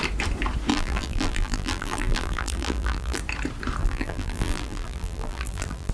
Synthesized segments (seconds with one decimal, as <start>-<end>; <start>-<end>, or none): 0.7-3.2; 3.8-5.9